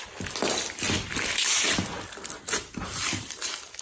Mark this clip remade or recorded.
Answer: remade